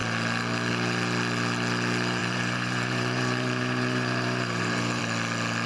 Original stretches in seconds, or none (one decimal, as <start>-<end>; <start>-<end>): 0.0-2.2; 5.0-5.7